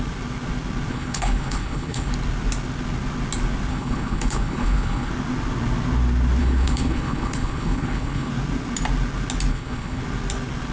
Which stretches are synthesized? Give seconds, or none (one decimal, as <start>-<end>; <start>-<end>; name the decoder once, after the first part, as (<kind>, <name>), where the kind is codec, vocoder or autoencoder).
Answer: 0.9-2.1 (codec, HILCodec); 3.7-5.1; 6.4-8.3; 9.5-10.0